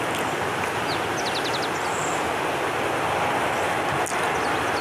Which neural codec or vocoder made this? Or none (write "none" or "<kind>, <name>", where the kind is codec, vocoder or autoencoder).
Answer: none